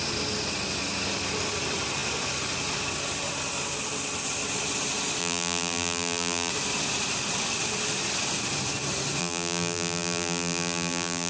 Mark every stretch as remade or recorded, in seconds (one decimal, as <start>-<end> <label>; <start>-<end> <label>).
0.0-5.2 recorded; 5.2-6.5 remade; 6.5-9.2 recorded; 9.2-11.3 remade